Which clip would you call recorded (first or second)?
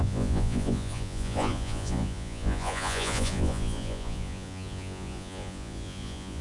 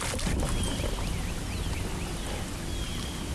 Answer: second